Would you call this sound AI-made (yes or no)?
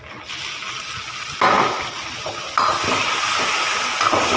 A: no